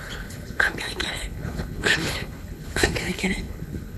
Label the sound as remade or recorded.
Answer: remade